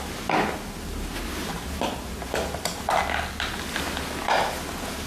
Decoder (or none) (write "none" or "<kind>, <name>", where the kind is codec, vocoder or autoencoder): none